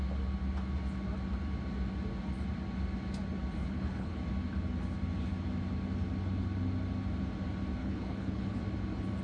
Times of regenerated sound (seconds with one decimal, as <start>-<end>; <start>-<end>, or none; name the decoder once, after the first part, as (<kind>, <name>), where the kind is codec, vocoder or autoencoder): 3.6-4.2 (codec, HILCodec); 7.8-8.6